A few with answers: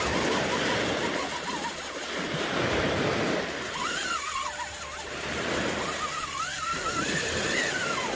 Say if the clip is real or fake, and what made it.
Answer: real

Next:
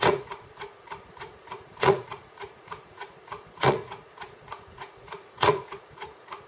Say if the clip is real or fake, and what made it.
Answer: fake, vocoder, Vocos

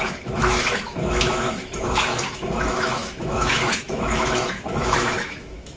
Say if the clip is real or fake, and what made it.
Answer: fake, autoencoder, DAC-VAE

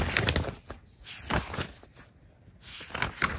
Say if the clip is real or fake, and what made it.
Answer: real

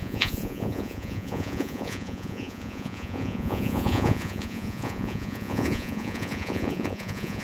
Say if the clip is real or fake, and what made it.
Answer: fake, vocoder, Vocos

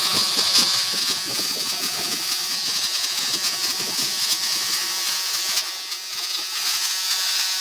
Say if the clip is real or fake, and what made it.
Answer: fake, vocoder, Vocos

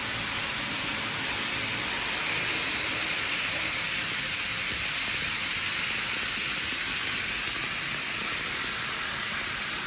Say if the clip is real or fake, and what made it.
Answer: real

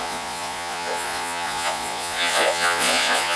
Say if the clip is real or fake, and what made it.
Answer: fake, vocoder, Vocos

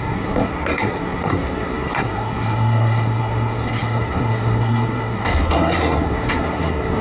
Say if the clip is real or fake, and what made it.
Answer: fake, codec, SNAC